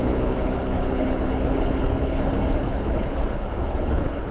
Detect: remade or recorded remade